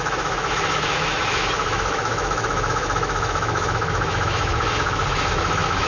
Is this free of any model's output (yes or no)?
no